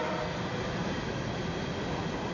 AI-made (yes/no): no